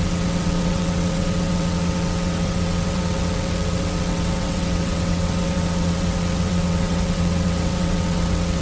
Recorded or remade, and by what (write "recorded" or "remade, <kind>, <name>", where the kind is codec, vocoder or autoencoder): remade, vocoder, WaveNeXt